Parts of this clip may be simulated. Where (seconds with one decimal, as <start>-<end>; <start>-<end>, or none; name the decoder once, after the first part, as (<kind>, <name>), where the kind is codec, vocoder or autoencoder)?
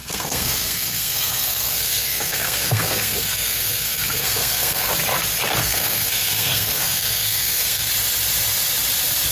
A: 0.0-4.9 (codec, SNAC); 5.6-7.9